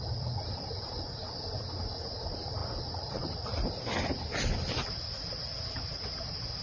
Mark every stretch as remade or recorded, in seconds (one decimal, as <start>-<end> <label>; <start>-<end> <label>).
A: 0.0-6.6 recorded